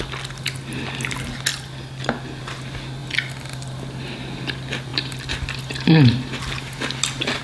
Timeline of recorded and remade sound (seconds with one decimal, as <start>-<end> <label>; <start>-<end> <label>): 0.0-3.0 recorded; 3.0-3.7 remade; 3.7-4.9 recorded; 4.9-7.4 remade